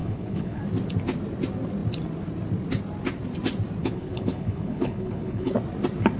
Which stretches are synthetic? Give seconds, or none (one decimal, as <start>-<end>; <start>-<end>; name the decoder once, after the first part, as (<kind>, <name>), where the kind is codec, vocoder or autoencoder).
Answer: 0.0-0.6 (codec, HILCodec); 3.8-5.5